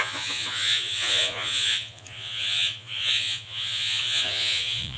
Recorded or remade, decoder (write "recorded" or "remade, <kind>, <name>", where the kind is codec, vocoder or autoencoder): remade, vocoder, Vocos